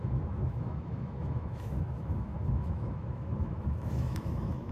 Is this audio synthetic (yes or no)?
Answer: yes